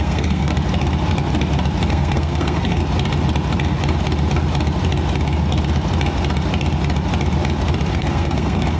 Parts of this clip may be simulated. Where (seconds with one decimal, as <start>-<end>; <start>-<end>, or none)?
0.0-0.5; 1.9-2.8; 7.9-8.8